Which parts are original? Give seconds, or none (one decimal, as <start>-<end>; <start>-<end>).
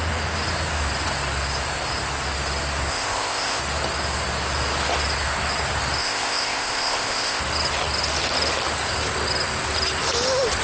0.0-2.9; 3.6-6.0; 7.4-10.6